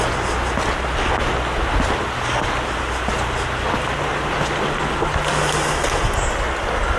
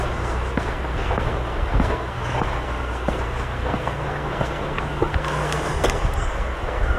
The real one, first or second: first